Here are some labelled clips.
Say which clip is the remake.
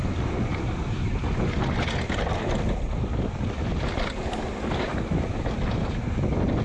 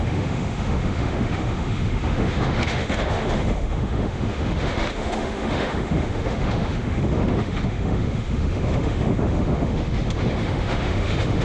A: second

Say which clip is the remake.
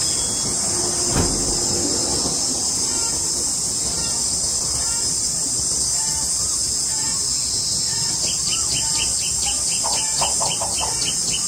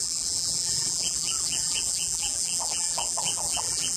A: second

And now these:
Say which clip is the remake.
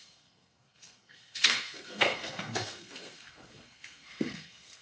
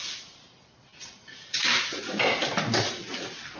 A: first